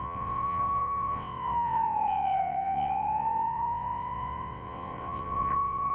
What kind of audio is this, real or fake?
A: fake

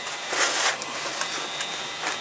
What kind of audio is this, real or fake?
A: real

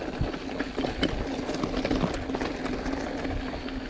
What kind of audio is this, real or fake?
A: real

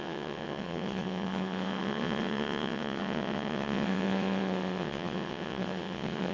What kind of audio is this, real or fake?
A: fake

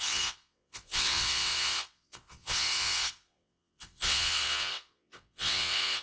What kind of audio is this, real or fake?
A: fake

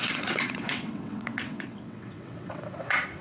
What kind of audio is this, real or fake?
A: fake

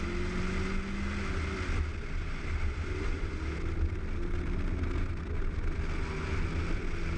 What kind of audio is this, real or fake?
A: real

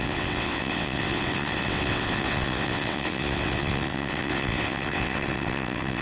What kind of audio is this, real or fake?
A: fake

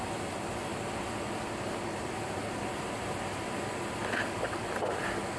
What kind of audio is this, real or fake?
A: real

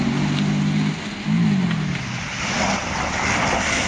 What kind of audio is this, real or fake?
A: real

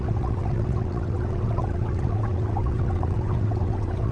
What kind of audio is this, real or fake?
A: fake